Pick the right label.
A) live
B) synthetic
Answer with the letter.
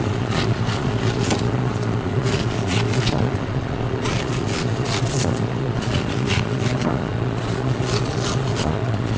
B